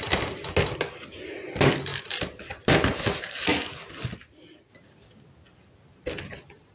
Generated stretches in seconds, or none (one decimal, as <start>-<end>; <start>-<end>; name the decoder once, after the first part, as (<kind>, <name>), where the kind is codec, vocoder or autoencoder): none